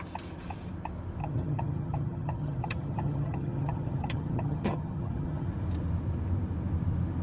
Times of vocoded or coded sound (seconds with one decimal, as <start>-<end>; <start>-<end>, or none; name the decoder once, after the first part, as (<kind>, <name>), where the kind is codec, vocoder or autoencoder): 1.2-5.5 (vocoder, HiFi-GAN)